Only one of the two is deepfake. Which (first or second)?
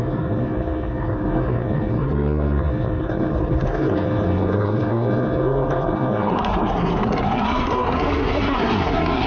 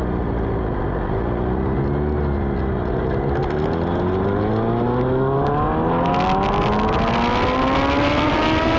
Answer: first